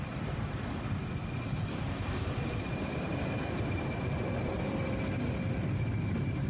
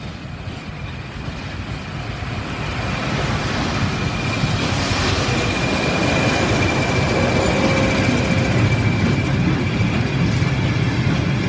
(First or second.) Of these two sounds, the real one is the second